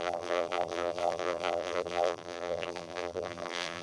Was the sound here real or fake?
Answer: fake